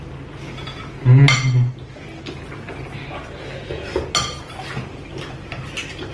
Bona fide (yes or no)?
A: yes